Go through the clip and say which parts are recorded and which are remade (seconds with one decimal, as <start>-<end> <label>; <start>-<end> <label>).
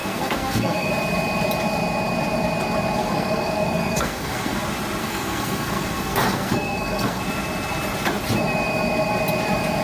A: 0.0-0.9 remade; 0.9-3.0 recorded; 3.0-4.6 remade; 4.6-5.0 recorded; 5.0-7.2 remade; 7.2-9.8 recorded